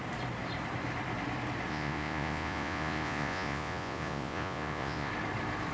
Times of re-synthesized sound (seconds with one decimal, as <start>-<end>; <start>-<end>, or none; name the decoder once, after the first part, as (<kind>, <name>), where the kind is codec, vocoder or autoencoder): 1.7-5.1 (vocoder, Vocos)